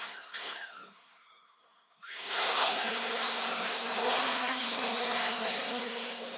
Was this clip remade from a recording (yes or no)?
yes